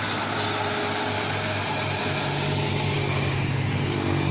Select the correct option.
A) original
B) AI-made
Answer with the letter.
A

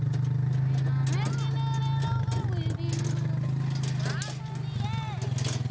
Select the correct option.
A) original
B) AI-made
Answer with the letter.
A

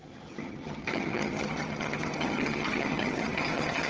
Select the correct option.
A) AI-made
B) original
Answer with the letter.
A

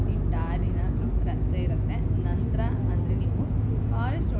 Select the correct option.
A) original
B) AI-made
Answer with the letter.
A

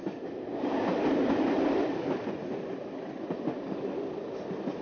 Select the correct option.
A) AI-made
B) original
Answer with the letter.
B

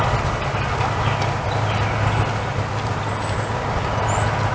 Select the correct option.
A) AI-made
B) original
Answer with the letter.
B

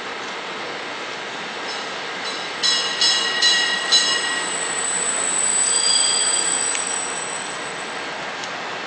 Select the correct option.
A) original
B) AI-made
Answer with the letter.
A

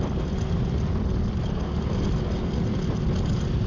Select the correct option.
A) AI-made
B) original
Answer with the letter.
B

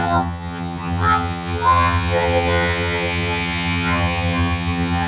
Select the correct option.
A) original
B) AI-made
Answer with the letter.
B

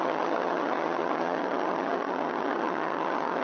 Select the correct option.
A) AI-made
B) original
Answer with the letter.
A